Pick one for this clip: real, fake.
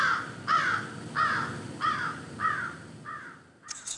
real